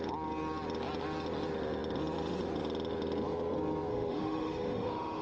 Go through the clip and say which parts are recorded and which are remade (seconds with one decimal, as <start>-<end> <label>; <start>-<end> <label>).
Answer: 0.0-3.9 recorded; 3.9-5.2 remade